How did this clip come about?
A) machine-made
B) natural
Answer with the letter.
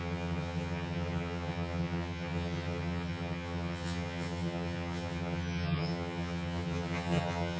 A